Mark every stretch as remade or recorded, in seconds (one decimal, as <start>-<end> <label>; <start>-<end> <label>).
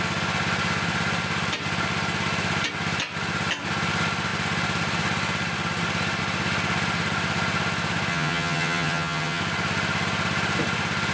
0.0-8.1 recorded; 8.1-9.4 remade; 9.4-11.1 recorded